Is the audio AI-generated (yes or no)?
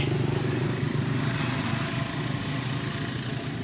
no